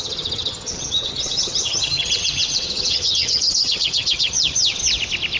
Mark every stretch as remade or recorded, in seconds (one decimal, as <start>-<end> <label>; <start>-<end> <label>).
0.0-4.8 remade; 4.8-5.4 recorded